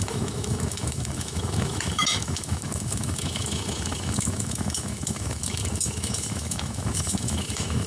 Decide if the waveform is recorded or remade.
remade